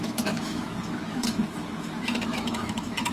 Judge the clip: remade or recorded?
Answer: remade